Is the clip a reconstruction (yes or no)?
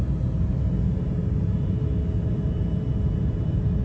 yes